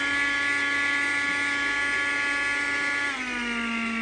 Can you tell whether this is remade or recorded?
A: recorded